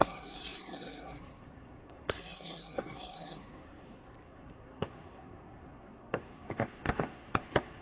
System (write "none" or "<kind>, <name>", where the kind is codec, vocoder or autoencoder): codec, SNAC